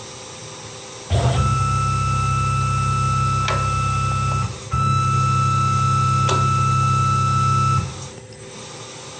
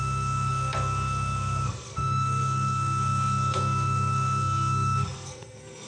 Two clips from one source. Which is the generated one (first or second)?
second